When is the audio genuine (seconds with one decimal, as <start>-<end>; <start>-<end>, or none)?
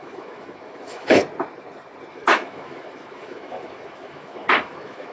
1.2-2.1